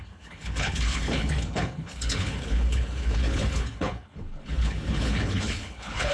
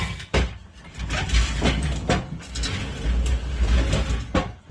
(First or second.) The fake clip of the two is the first